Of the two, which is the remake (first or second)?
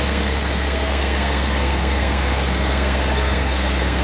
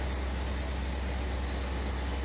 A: first